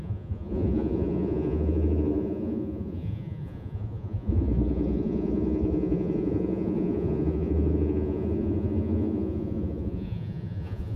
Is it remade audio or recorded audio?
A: remade